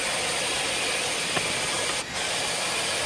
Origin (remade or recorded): recorded